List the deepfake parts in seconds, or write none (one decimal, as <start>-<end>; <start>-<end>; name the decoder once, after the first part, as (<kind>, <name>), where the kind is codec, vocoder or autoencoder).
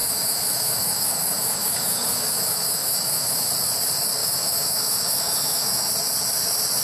0.0-3.5 (autoencoder, DAC-VAE); 4.2-5.9